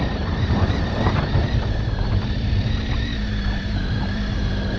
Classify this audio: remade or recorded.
remade